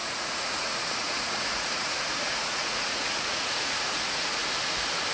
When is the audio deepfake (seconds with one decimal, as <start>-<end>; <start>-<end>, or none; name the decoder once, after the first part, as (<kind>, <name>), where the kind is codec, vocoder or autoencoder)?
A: 0.0-4.4 (vocoder, Vocos)